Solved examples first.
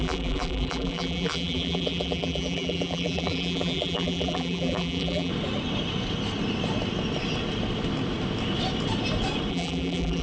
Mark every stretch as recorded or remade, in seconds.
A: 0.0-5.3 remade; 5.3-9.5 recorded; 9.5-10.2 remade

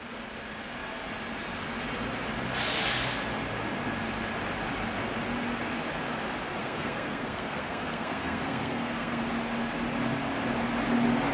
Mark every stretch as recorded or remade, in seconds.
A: 0.0-6.6 recorded; 6.6-9.3 remade; 9.3-11.3 recorded

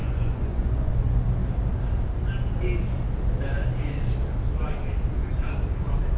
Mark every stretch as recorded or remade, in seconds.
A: 0.0-0.9 remade; 0.9-6.2 recorded

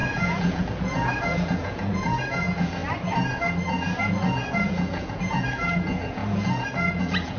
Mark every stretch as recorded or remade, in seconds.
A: 0.0-2.8 remade; 2.8-4.0 recorded; 4.0-7.4 remade

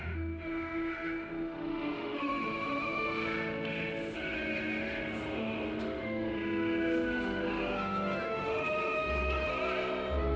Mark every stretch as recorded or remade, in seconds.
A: 0.0-9.5 remade; 9.5-10.4 recorded

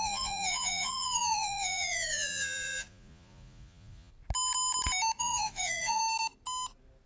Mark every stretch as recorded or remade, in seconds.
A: 0.0-4.1 remade; 4.1-5.2 recorded; 5.2-6.0 remade; 6.0-7.1 recorded

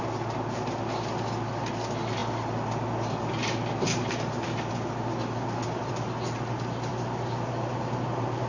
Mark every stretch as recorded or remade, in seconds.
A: 0.0-8.5 recorded